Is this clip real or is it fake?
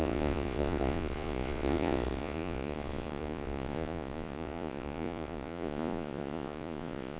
fake